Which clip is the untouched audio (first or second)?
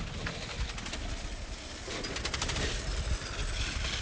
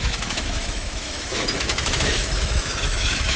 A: first